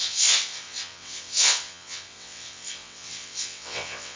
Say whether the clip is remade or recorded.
remade